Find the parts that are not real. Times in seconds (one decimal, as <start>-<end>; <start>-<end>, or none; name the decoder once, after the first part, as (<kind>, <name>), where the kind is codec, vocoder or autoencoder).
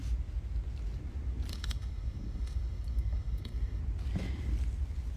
1.5-3.8 (codec, DAC)